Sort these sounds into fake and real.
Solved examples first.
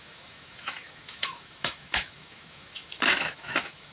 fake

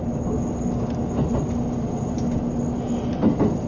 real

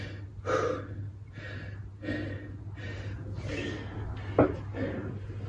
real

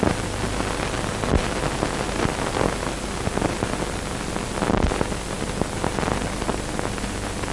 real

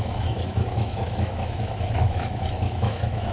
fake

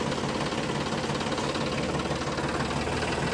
real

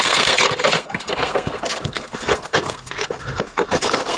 fake